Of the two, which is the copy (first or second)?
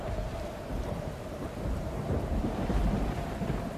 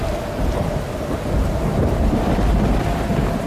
first